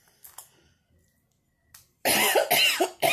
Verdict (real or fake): real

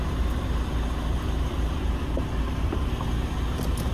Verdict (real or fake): real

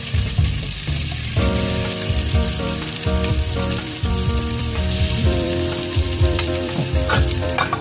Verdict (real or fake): fake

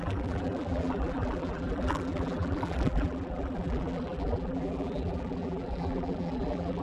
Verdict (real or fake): fake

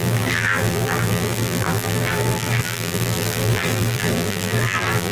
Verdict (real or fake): fake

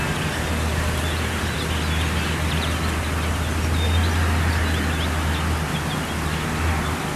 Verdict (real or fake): real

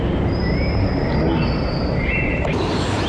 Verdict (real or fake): fake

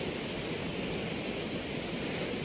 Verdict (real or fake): real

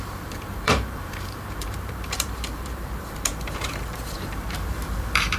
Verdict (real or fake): fake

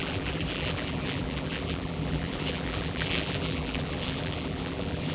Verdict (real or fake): fake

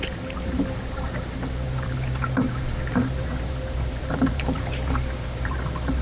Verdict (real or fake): fake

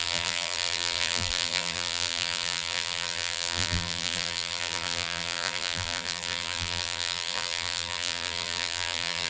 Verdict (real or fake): fake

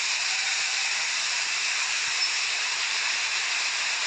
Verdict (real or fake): fake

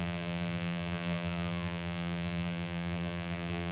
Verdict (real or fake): fake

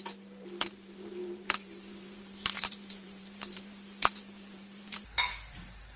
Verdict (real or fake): fake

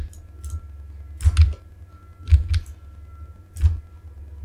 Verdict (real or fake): real